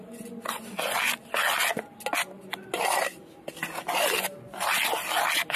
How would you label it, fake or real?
real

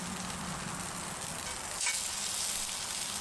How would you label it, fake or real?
real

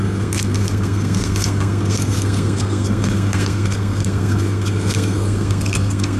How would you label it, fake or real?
fake